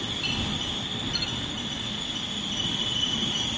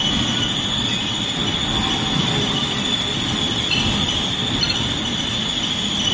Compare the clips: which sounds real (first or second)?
first